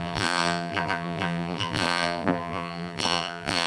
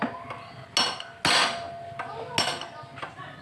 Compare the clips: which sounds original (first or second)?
second